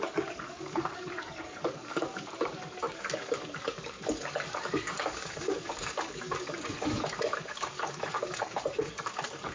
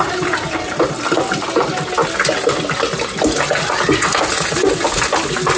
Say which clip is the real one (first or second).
second